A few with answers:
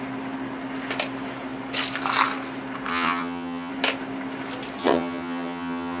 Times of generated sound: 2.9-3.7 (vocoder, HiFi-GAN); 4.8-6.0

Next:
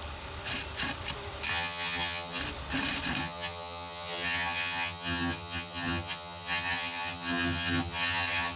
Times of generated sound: 1.5-2.4 (vocoder, HiFi-GAN); 3.2-8.6

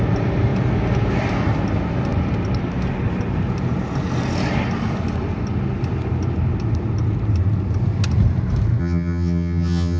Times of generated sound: 8.8-10.0 (vocoder, HiFi-GAN)

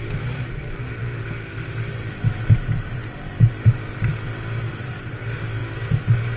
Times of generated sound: none